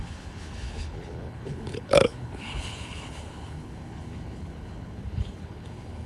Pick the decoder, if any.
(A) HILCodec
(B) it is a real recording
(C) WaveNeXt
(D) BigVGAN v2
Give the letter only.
A